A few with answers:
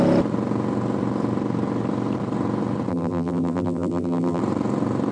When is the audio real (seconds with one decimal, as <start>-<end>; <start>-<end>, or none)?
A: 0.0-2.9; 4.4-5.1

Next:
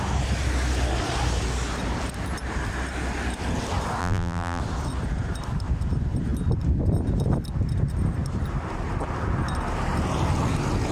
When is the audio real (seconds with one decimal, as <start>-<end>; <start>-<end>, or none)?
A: 0.0-4.0; 4.6-10.9

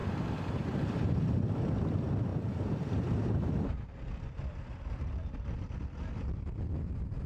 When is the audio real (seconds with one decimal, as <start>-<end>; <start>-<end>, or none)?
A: 1.4-2.3; 6.7-7.3

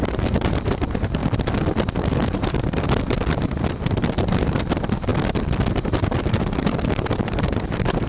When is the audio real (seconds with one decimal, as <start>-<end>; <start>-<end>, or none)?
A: 1.2-2.1; 5.1-5.7

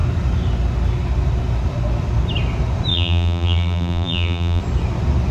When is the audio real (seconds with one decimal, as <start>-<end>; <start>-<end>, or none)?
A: 0.0-2.9; 4.6-5.3

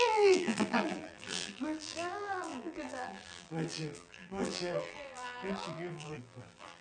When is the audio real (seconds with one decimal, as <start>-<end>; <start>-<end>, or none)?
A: none

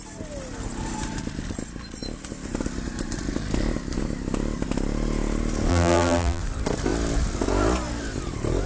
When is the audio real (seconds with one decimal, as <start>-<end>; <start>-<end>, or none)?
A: 0.0-5.7; 6.4-8.7